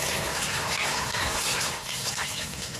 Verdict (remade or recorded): remade